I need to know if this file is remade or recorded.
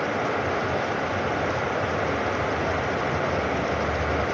recorded